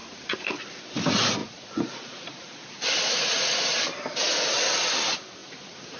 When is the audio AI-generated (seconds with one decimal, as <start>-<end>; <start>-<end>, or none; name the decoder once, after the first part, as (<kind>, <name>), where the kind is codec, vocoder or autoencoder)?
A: 0.0-0.8 (vocoder, Vocos); 1.4-3.6; 5.4-6.0